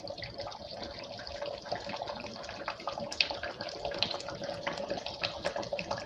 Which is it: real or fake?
fake